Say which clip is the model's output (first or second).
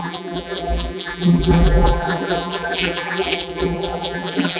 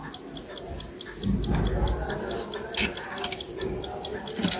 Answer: first